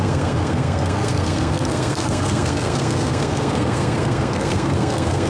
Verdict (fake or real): fake